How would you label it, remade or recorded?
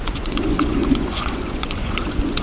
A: remade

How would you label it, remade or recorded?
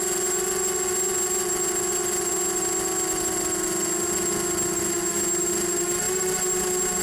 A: recorded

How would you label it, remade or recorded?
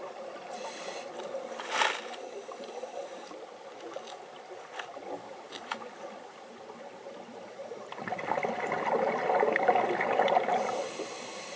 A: remade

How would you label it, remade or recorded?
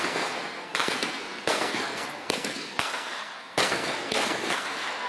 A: remade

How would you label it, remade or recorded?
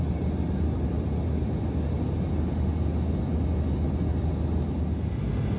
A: recorded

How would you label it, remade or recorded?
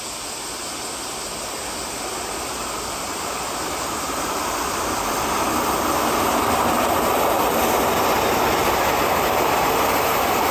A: recorded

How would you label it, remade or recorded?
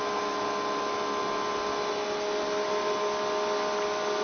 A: recorded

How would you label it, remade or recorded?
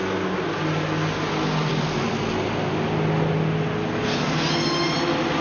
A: recorded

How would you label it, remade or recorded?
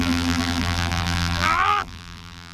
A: remade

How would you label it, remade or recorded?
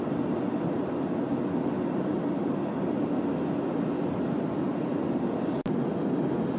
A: recorded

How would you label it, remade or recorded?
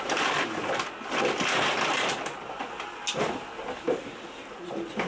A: recorded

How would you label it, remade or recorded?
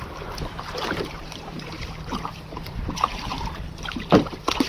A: remade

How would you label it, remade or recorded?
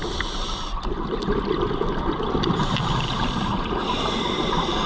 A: recorded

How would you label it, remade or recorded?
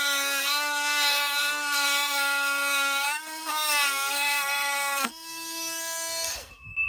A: remade